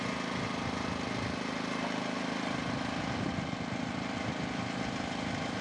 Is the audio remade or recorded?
recorded